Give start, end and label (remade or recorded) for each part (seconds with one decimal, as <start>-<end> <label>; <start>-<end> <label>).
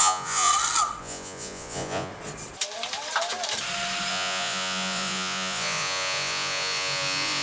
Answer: 0.0-0.5 remade; 0.5-1.0 recorded; 1.0-2.1 remade; 2.1-4.1 recorded; 4.1-7.4 remade